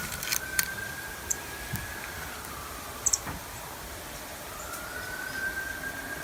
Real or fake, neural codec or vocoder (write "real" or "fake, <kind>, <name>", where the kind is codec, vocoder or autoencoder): fake, vocoder, BigVGAN v2